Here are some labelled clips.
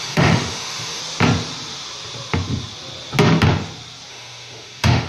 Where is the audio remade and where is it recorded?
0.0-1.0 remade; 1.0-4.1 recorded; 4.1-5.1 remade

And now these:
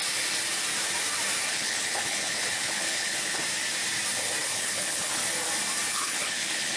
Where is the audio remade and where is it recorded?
0.0-1.5 recorded; 1.5-3.4 remade; 3.4-4.4 recorded; 4.4-5.2 remade; 5.2-5.9 recorded; 5.9-6.8 remade

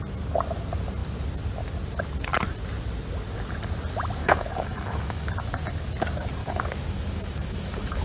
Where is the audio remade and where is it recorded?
0.0-4.2 recorded; 4.2-5.3 remade; 5.3-6.4 recorded; 6.4-8.0 remade

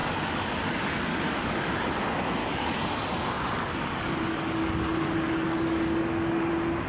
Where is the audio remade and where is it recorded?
0.0-1.9 remade; 1.9-2.4 recorded; 2.4-6.5 remade; 6.5-6.9 recorded

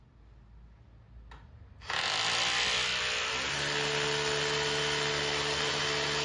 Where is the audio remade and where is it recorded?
0.0-6.2 recorded

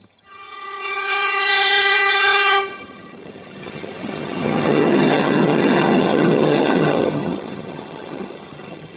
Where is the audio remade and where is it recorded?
0.0-9.0 remade

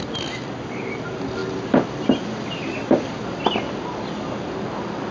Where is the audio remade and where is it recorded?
0.0-5.1 recorded

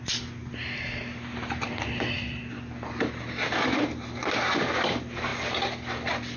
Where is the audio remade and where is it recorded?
0.0-6.4 recorded